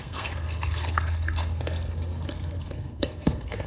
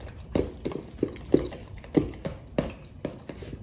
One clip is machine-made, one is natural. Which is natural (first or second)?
second